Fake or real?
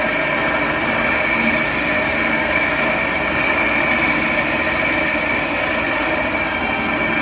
real